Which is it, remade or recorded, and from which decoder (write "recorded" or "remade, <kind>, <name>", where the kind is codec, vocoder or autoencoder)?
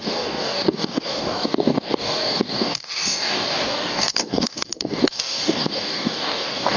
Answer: remade, codec, DAC